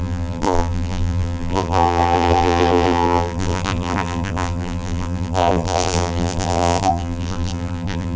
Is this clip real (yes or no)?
no